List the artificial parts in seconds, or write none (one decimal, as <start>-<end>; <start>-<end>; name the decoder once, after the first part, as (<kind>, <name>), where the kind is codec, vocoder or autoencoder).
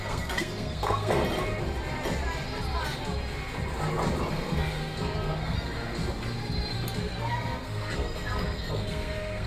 0.0-1.2 (codec, SNAC); 4.3-6.0; 7.0-9.5